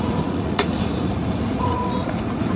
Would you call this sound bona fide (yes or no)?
no